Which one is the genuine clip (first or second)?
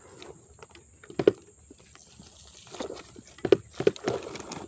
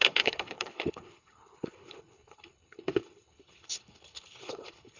first